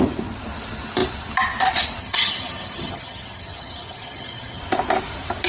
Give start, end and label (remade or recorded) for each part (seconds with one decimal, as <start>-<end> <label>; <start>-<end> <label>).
0.0-2.0 recorded; 2.0-4.6 remade; 4.6-5.5 recorded